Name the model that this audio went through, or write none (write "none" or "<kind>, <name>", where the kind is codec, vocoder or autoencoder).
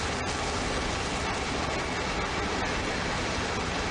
none